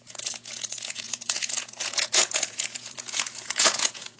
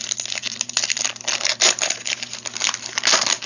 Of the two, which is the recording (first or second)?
second